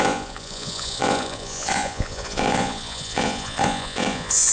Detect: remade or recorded remade